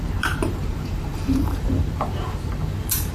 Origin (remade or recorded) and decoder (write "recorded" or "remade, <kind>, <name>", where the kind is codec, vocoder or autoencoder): remade, vocoder, BigVGAN v2